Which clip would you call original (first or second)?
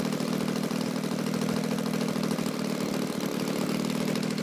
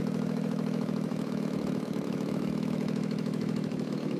first